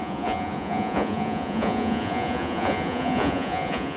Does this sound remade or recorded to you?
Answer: remade